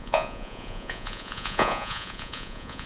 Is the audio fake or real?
fake